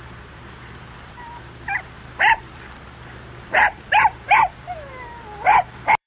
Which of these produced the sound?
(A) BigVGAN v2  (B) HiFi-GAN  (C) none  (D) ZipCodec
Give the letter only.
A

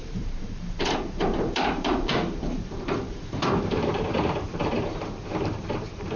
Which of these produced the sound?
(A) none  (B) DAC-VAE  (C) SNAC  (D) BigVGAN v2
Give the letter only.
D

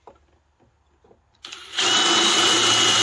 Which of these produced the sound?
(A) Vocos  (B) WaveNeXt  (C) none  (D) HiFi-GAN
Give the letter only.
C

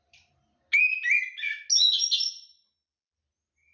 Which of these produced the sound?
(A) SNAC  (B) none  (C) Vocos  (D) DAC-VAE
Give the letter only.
B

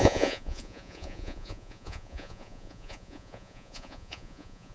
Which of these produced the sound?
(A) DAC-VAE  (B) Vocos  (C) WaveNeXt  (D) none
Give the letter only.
B